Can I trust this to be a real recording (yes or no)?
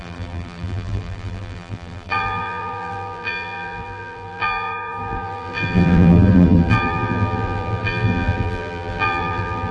no